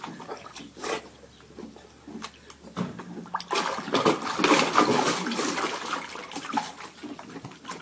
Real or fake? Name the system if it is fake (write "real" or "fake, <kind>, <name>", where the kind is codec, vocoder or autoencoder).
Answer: real